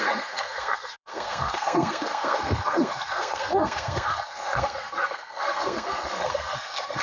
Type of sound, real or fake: fake